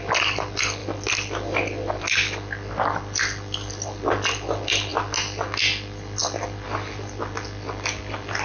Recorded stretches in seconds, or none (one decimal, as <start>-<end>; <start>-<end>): 0.0-8.4